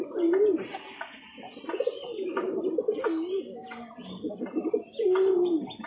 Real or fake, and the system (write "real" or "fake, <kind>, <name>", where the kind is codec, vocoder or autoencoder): real